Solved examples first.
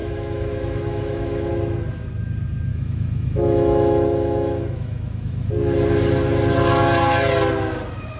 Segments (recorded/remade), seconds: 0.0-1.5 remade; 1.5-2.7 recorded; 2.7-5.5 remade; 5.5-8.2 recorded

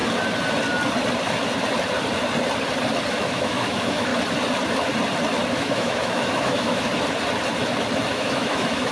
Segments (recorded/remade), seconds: 0.0-3.1 recorded; 3.1-4.1 remade; 4.1-5.5 recorded; 5.5-6.9 remade; 6.9-8.1 recorded; 8.1-8.9 remade

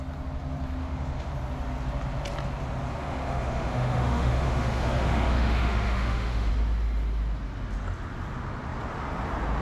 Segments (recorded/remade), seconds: 0.0-0.8 recorded; 0.8-1.3 remade; 1.3-3.0 recorded; 3.0-6.5 remade; 6.5-9.6 recorded